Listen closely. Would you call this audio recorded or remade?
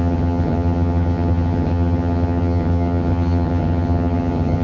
remade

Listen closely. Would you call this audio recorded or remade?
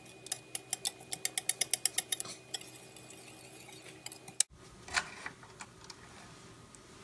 recorded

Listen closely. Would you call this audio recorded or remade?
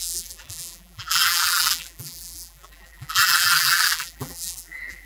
remade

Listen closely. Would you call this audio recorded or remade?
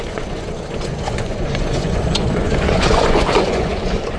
remade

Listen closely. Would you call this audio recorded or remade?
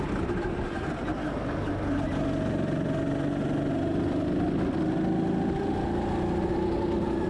recorded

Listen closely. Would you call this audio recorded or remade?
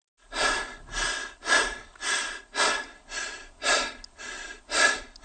recorded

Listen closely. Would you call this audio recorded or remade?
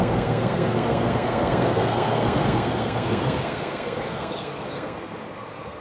remade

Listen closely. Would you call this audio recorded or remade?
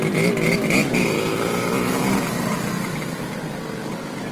recorded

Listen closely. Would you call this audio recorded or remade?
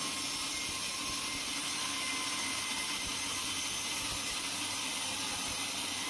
recorded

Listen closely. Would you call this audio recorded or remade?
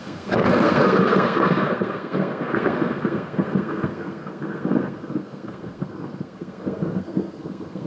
remade